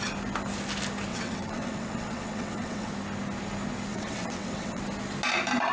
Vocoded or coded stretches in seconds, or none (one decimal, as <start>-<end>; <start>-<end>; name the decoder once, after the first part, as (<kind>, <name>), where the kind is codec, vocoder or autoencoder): 1.1-2.9 (vocoder, WaveNeXt); 3.9-4.8